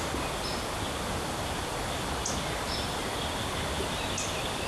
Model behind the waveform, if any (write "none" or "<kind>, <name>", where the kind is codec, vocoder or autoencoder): none